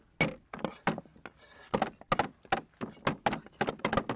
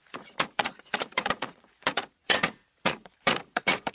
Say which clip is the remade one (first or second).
second